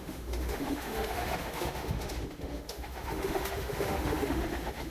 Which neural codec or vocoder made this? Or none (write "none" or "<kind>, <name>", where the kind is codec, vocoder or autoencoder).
autoencoder, DAC-VAE